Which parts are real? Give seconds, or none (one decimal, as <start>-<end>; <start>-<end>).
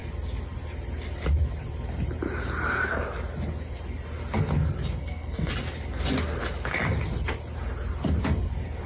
0.0-5.0; 5.5-8.9